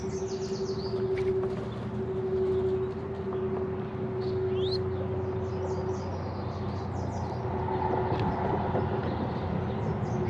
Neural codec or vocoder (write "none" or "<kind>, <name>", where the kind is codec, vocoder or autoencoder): none